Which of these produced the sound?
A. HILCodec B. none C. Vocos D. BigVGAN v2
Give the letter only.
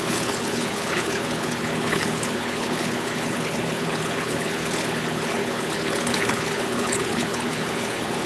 A